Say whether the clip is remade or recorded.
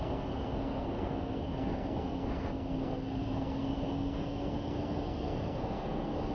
remade